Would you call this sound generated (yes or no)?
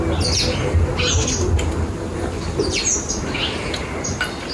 no